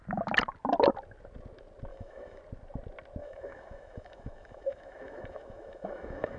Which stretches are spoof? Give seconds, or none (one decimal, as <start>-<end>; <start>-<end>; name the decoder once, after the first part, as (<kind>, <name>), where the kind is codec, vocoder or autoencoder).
1.9-2.4 (autoencoder, DAC-VAE); 3.2-6.4